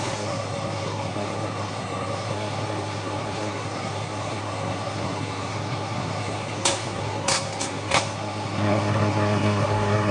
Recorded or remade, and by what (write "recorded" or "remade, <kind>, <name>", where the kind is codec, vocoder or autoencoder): remade, codec, SNAC